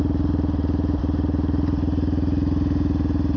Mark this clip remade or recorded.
remade